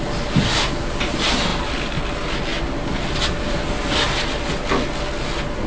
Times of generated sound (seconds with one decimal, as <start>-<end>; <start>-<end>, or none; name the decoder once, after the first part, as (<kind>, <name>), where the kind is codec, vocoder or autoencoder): none